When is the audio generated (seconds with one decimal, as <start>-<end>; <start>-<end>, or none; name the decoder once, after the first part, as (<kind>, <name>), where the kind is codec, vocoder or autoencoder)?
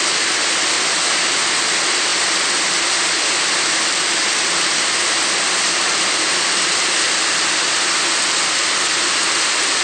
none